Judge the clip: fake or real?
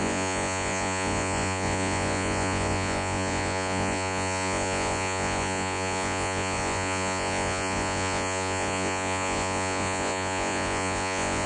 fake